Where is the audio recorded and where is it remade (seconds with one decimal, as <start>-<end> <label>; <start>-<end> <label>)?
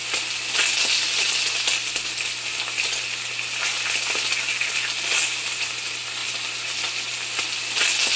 0.0-8.2 recorded